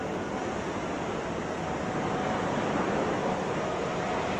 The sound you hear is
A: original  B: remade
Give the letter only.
A